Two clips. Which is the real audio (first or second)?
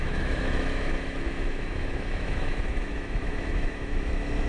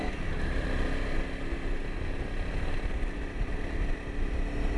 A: second